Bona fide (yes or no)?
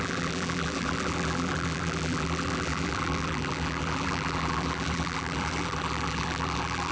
no